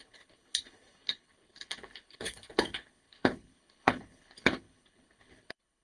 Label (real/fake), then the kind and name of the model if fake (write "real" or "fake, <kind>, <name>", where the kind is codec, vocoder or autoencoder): fake, codec, HILCodec